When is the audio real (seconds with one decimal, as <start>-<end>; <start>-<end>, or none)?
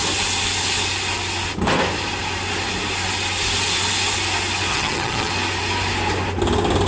0.0-4.7; 5.3-6.9